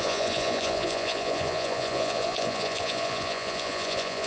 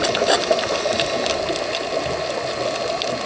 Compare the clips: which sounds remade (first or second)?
first